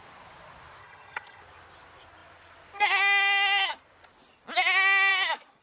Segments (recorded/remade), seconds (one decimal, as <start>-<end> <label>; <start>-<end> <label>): 0.0-0.8 recorded; 0.8-1.4 remade; 1.4-5.6 recorded